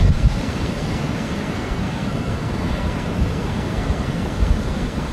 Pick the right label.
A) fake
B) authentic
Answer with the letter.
A